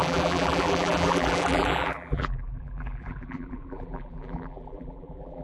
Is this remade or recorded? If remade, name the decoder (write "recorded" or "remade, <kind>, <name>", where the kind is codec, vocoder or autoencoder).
remade, vocoder, BigVGAN v2